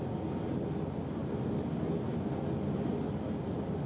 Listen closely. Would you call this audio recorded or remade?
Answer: recorded